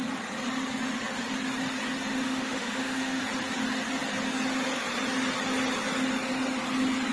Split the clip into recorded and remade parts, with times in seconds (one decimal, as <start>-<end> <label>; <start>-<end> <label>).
0.0-2.1 recorded; 2.1-3.2 remade; 3.2-7.1 recorded